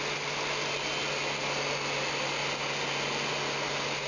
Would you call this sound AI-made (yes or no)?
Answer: no